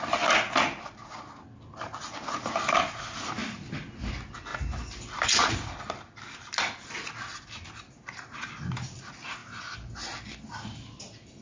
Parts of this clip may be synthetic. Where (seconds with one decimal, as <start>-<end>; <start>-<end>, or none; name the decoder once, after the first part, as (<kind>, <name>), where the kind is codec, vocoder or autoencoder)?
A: none